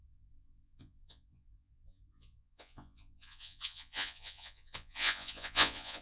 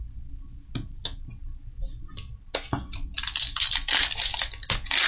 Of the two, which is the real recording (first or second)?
second